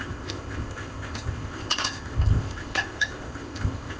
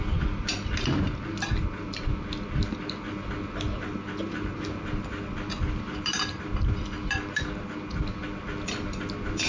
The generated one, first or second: first